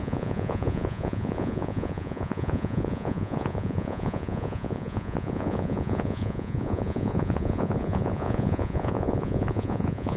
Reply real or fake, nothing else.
fake